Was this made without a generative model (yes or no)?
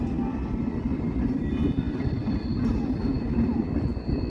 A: yes